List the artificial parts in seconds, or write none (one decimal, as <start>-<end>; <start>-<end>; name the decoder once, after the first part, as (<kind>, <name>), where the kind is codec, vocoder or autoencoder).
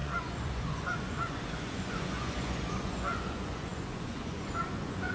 0.0-5.1 (vocoder, Vocos)